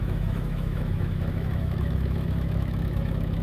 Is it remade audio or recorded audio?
remade